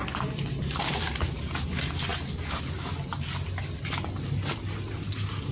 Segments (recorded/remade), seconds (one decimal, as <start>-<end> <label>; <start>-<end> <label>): 0.0-5.5 recorded